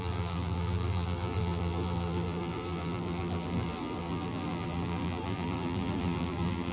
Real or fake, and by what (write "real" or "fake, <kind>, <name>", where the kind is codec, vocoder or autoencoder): fake, vocoder, BigVGAN v2